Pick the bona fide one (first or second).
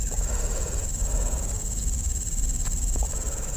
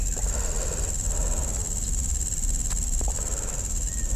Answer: second